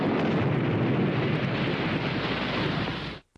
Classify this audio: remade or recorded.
recorded